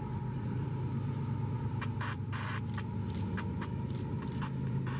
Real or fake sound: fake